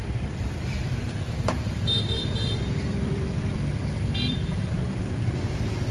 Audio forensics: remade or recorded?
remade